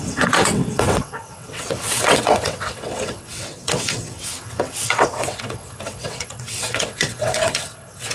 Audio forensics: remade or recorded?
remade